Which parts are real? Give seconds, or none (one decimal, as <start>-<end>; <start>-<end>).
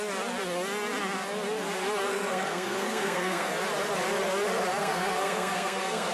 0.0-2.1; 3.5-4.8